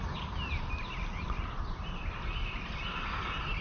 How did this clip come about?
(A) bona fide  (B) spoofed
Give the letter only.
B